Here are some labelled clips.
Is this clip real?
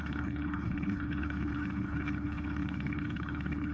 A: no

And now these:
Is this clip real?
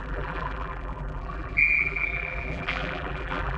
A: no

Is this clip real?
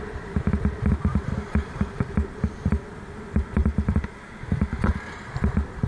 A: yes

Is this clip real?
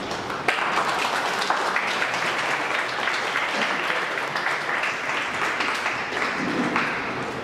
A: yes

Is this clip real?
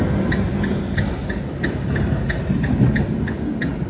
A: yes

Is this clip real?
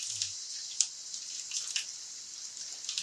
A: yes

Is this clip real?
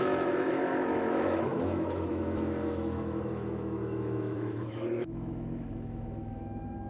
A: no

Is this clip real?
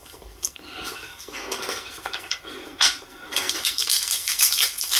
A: no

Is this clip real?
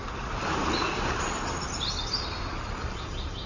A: yes